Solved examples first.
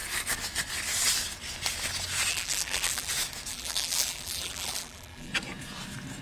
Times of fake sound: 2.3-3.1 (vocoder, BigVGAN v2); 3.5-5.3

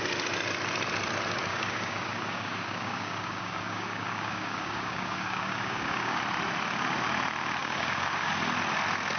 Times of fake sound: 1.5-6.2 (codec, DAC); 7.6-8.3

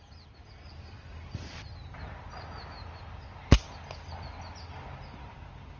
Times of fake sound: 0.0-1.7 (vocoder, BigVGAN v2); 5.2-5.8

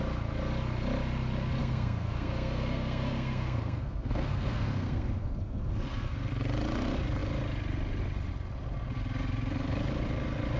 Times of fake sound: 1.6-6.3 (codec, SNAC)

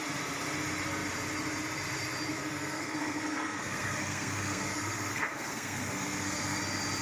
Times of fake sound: 2.4-6.6 (codec, SNAC)

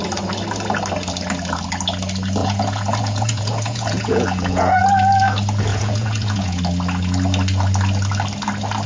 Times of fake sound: 2.4-4.8 (vocoder, Vocos); 5.7-6.6

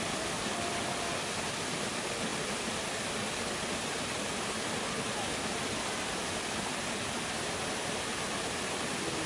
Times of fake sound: none